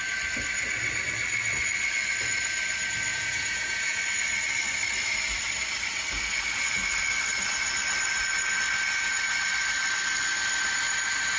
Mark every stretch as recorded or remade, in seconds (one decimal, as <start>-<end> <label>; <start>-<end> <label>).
0.0-3.1 recorded; 3.1-4.0 remade; 4.0-11.4 recorded